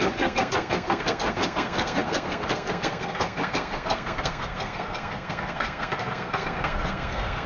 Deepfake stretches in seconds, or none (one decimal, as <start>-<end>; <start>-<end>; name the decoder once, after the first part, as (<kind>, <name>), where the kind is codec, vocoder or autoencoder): 0.0-7.5 (codec, SNAC)